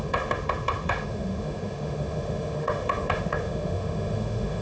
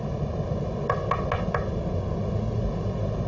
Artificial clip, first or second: first